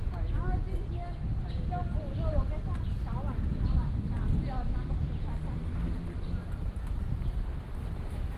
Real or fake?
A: real